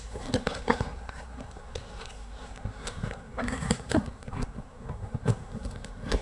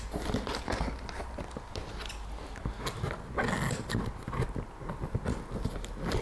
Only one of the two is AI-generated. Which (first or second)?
first